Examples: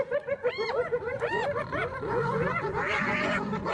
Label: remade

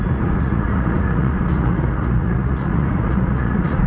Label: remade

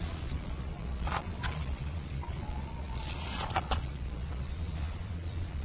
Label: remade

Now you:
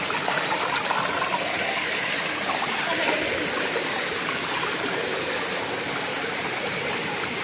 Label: recorded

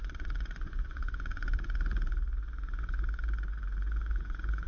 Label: remade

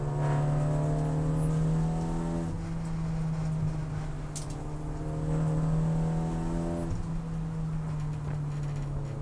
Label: recorded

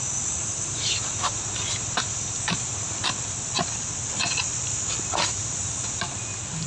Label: recorded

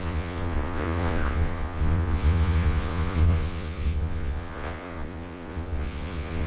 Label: remade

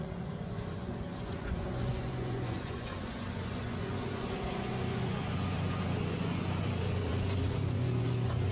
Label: remade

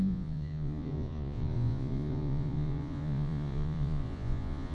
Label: remade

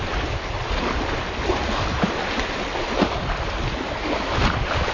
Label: recorded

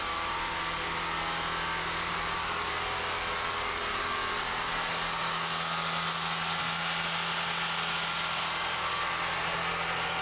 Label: recorded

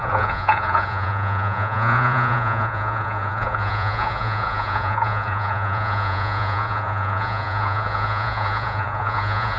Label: remade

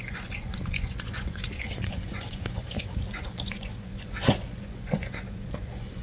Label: remade